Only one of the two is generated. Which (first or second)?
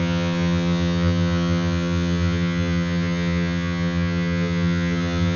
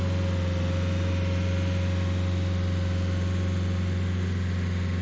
first